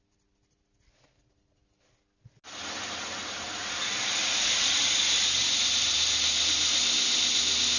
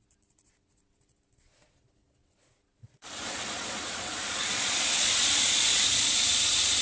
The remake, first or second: second